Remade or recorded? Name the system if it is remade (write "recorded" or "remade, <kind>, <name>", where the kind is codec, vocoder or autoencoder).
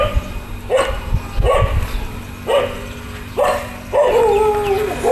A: recorded